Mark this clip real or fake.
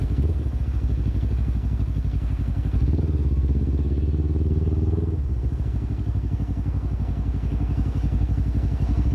fake